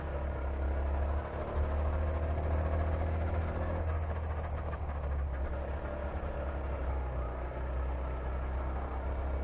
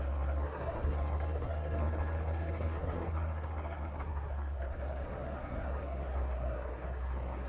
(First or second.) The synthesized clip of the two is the second